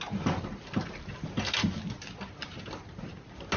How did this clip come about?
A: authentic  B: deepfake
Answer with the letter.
A